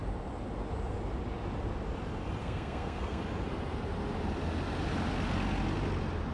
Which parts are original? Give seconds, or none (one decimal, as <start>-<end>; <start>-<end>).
0.0-2.4; 3.2-6.3